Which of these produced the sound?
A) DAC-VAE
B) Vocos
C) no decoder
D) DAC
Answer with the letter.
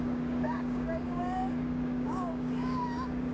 D